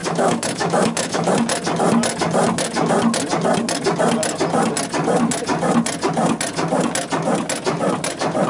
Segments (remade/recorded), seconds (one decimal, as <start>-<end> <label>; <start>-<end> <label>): 0.0-1.3 remade; 1.3-8.5 recorded